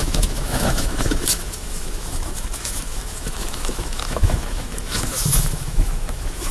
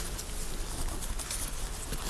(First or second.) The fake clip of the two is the first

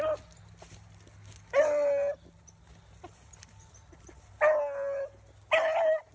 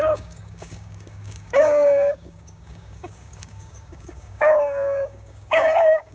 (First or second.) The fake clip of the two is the second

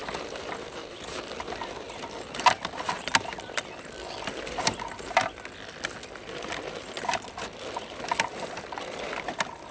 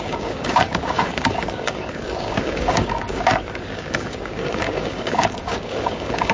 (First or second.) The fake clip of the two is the second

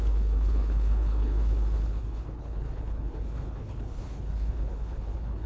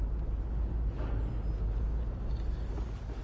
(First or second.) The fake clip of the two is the first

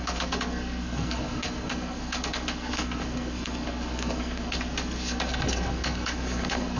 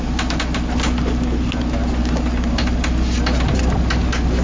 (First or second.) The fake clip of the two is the first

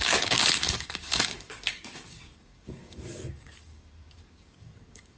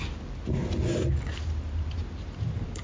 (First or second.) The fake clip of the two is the first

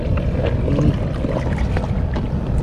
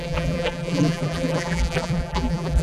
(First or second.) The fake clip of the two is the second